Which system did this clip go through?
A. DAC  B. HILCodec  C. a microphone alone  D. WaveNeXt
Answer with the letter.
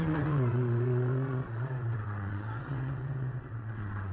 D